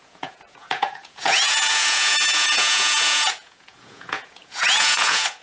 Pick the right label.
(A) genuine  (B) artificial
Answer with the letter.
B